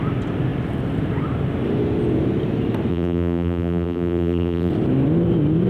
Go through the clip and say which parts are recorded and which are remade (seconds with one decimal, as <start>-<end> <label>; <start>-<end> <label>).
0.0-2.9 recorded; 2.9-4.7 remade; 4.7-5.7 recorded

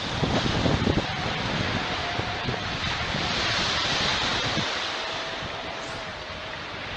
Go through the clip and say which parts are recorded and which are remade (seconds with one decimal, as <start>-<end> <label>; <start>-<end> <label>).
0.0-2.0 recorded; 2.0-3.5 remade; 3.5-6.1 recorded; 6.1-7.0 remade